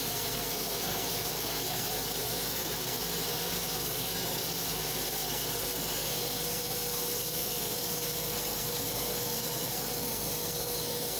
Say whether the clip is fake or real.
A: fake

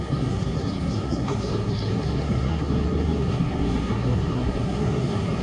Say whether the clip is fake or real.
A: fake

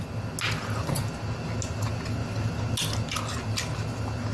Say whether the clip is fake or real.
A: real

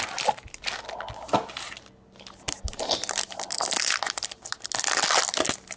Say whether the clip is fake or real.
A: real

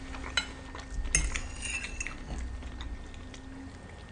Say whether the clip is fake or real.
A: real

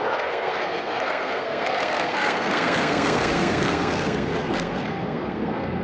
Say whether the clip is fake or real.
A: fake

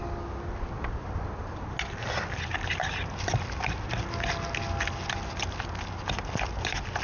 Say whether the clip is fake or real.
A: real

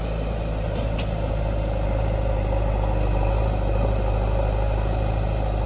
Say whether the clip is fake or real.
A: real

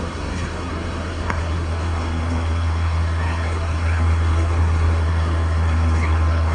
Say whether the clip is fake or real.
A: fake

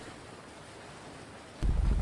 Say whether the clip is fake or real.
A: real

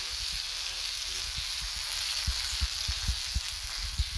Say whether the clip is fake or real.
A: real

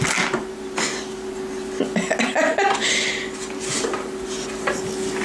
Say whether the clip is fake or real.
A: real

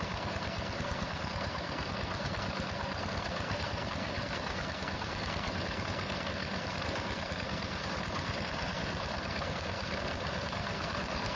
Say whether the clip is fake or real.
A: fake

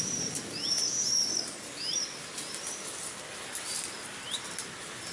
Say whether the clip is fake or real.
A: real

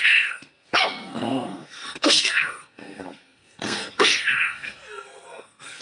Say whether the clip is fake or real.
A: fake